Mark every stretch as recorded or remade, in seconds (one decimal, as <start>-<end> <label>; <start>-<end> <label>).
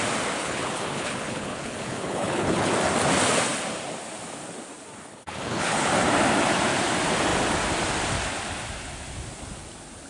0.0-0.4 recorded; 0.4-2.7 remade; 2.7-5.1 recorded; 5.1-5.9 remade; 5.9-10.1 recorded